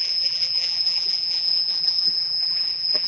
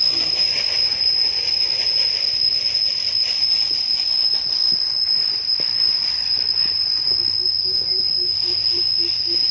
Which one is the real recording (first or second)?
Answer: second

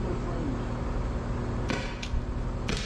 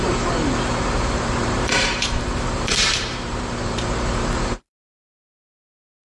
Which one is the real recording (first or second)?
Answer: first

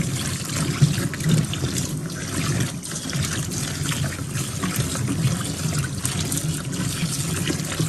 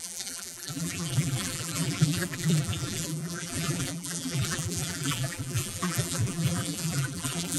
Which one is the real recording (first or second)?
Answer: first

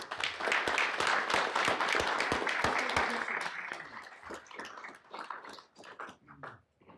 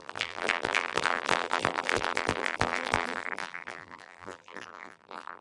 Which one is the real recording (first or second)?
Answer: first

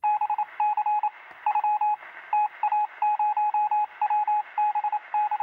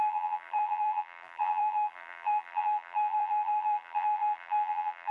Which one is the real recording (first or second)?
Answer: first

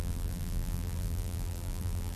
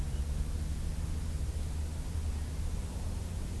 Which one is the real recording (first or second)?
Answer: second